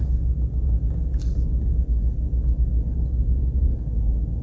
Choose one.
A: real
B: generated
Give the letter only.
A